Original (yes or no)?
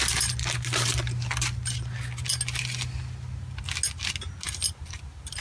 yes